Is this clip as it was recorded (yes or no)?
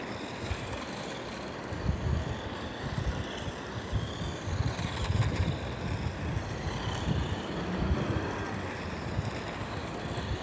yes